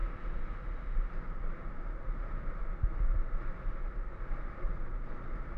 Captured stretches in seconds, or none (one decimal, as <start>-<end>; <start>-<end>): 0.0-5.6